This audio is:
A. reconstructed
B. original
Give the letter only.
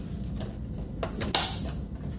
B